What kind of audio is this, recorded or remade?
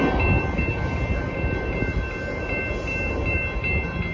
recorded